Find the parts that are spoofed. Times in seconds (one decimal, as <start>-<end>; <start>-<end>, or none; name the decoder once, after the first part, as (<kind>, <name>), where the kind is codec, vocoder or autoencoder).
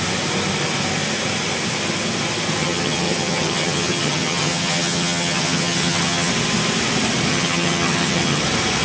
2.6-6.3 (vocoder, HiFi-GAN); 7.3-8.4